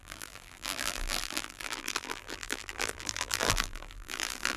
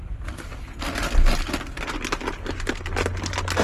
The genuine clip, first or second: second